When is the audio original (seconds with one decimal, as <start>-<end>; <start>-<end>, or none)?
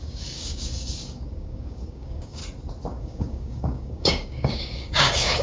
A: 2.4-3.0